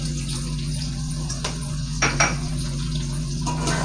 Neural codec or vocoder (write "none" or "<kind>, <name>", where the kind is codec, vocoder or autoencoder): vocoder, Vocos